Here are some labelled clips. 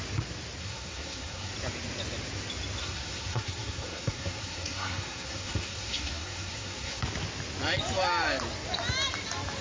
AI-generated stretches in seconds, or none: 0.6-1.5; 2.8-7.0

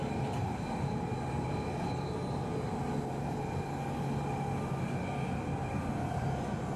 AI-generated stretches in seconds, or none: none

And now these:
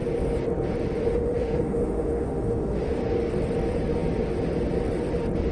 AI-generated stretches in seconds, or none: 1.1-3.0